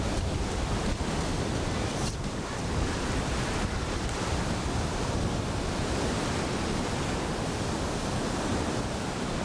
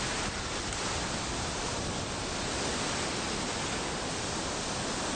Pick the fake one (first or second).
first